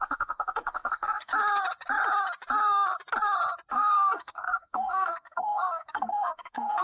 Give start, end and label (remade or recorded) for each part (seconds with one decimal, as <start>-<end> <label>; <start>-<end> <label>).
0.0-1.3 remade; 1.3-3.7 recorded; 3.7-6.8 remade